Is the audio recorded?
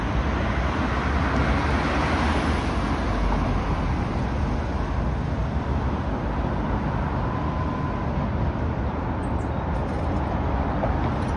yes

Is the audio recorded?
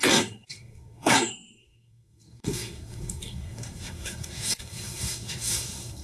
no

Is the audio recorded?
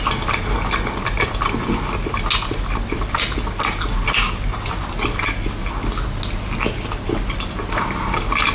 yes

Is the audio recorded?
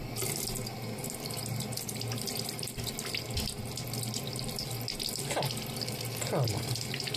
yes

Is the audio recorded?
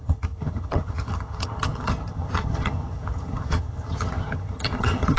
no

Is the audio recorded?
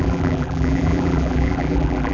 no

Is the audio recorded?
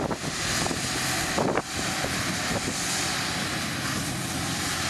yes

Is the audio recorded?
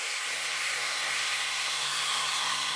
no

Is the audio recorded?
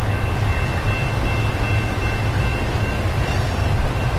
yes